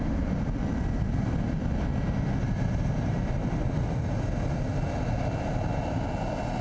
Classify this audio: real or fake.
real